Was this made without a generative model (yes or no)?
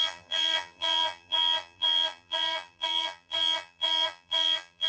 no